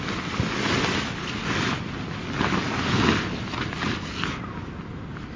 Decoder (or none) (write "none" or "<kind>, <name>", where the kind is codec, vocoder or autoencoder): none